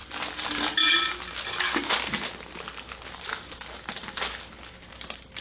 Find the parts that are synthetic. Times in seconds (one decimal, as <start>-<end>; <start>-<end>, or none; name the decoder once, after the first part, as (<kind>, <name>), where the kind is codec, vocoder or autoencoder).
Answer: none

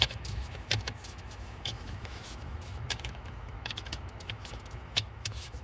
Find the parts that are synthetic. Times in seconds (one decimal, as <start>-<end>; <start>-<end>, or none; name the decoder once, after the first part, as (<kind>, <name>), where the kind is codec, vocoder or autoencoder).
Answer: 0.0-5.6 (autoencoder, DAC-VAE)

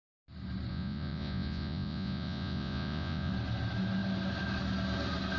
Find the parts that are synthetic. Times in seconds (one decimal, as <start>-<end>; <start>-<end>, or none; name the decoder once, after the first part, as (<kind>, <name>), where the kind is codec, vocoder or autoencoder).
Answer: 0.7-3.3 (vocoder, Vocos)

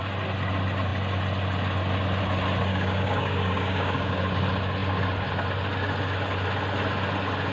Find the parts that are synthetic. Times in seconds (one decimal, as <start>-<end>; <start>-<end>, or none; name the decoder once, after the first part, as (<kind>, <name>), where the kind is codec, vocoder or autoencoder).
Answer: 2.7-4.2 (codec, DAC)

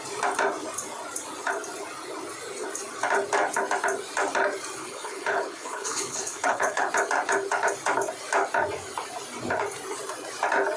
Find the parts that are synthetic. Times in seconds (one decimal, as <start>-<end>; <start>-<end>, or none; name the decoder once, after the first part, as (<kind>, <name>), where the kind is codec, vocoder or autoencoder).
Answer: 4.8-6.9 (codec, HILCodec)

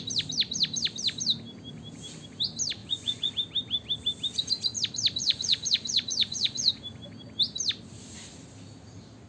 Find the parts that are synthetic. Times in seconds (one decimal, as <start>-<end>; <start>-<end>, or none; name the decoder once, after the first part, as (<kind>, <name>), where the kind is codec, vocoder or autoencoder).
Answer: 2.8-3.3 (vocoder, Vocos); 5.2-6.7

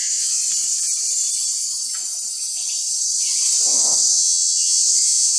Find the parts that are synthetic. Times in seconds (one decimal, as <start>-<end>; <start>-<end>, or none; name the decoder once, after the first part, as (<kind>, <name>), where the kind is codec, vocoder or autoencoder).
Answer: 0.0-0.4 (vocoder, WaveNeXt); 3.6-5.4